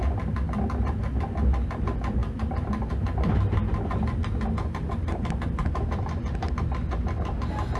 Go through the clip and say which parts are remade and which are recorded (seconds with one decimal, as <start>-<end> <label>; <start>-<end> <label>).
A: 0.0-7.8 recorded